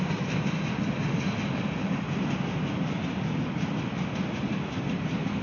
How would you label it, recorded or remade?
recorded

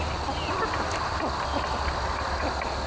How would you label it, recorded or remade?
recorded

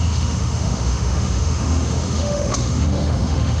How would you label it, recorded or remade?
remade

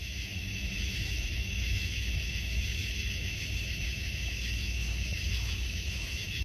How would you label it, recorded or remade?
remade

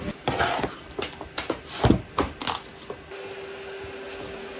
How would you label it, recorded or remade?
recorded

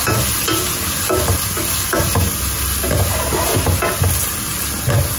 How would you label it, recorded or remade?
recorded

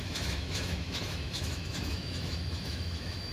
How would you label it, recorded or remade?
remade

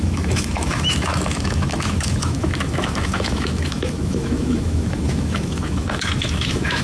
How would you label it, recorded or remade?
remade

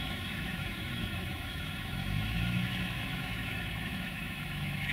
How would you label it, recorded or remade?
remade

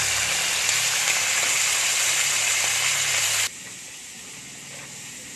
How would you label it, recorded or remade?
recorded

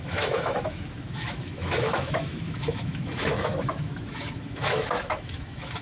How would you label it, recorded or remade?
remade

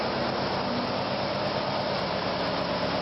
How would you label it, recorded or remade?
recorded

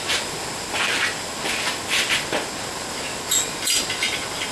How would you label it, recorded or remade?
recorded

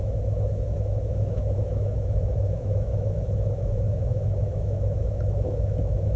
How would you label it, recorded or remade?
remade